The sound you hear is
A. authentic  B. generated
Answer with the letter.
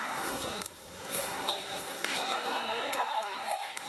B